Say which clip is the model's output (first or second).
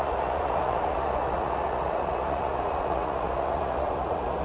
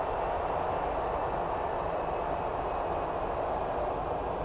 first